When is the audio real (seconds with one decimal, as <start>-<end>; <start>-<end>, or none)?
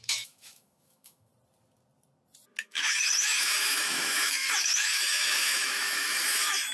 1.3-2.6